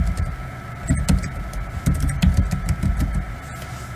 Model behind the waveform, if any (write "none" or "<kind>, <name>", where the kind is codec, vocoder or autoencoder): none